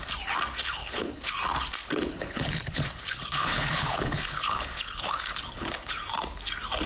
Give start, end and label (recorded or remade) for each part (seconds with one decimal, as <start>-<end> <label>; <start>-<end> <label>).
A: 0.0-0.8 recorded; 0.8-1.3 remade; 1.3-1.8 recorded; 1.8-5.9 remade; 5.9-6.9 recorded